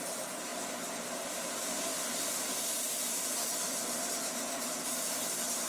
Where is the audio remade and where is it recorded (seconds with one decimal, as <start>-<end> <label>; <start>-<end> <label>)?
0.0-0.5 remade; 0.5-1.0 recorded; 1.0-5.7 remade